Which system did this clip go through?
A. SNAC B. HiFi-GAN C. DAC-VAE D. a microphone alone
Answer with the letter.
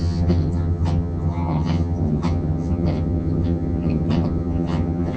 B